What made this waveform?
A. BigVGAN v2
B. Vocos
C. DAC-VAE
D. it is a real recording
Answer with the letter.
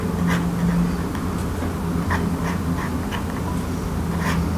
D